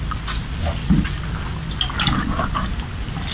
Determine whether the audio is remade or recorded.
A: recorded